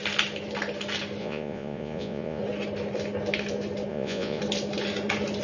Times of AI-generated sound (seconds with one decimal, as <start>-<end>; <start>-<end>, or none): 1.2-2.4; 3.9-4.4